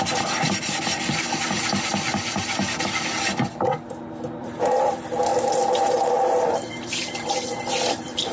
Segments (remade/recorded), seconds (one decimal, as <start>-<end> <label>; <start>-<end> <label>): 0.0-1.9 remade; 1.9-4.4 recorded; 4.4-5.3 remade; 5.3-6.3 recorded; 6.3-8.3 remade